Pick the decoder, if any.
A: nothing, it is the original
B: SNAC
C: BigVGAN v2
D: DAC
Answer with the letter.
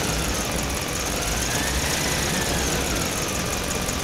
A